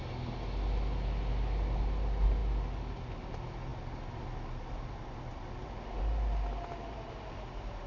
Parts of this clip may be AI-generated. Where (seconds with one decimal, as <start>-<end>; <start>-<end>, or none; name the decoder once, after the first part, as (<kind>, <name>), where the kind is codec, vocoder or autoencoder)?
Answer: none